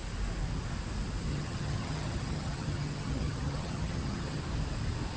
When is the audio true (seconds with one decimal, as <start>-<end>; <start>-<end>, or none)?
0.0-1.3; 4.4-5.2